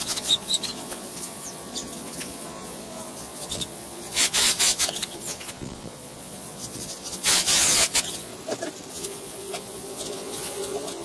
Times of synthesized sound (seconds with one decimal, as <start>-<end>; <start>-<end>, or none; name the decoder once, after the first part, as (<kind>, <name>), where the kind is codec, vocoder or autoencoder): 0.0-8.3 (vocoder, Vocos); 8.9-11.0